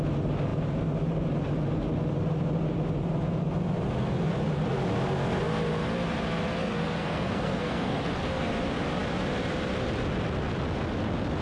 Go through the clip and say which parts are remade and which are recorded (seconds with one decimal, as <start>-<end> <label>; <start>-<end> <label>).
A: 0.0-6.6 recorded; 6.6-8.5 remade; 8.5-11.4 recorded